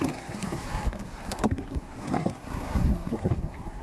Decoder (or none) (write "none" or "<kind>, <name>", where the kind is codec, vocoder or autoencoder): codec, SNAC